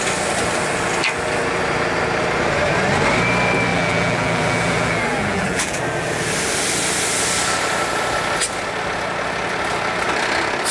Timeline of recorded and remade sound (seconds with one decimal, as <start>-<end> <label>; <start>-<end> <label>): 0.0-3.7 recorded; 3.7-5.8 remade; 5.8-10.7 recorded